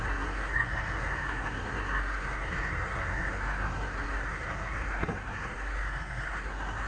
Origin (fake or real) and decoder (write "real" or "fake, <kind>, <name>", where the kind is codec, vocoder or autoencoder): fake, codec, SNAC